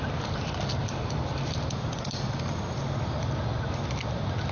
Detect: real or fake real